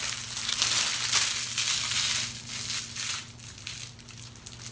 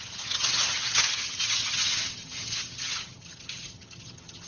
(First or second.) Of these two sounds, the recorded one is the first